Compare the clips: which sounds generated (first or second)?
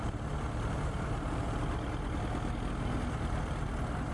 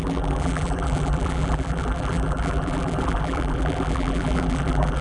second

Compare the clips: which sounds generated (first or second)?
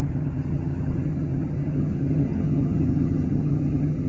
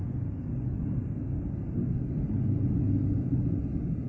first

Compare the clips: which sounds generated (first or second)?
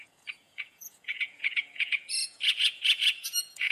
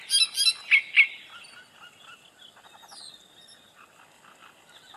first